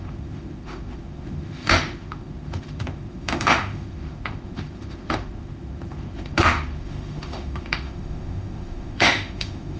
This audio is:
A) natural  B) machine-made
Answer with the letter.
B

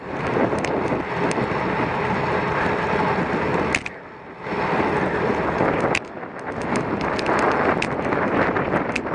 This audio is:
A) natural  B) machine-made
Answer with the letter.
A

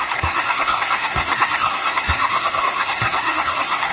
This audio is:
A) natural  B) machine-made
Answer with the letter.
B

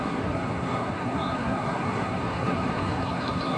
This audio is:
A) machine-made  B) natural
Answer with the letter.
A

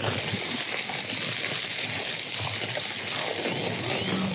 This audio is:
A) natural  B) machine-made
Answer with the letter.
A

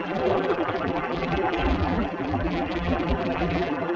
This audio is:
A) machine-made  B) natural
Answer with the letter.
A